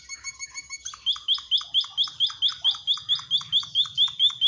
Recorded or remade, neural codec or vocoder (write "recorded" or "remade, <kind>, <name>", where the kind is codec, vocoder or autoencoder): recorded